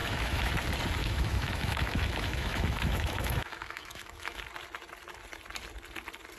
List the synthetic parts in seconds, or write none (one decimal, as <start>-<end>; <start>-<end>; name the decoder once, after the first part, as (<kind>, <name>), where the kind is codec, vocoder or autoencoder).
0.0-0.5 (autoencoder, DAC-VAE); 1.0-4.4